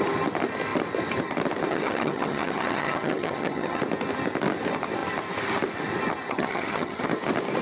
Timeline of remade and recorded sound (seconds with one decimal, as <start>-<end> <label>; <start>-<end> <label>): 0.0-1.7 recorded; 1.7-3.8 remade; 3.8-6.3 recorded; 6.3-7.0 remade; 7.0-7.6 recorded